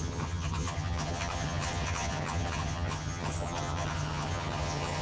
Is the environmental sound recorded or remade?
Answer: remade